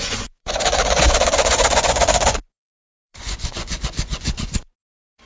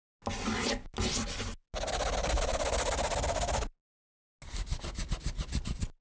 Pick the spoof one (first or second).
first